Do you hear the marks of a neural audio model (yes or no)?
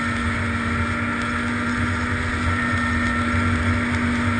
no